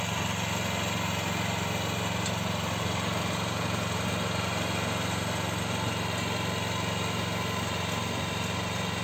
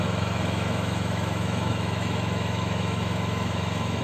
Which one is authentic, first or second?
first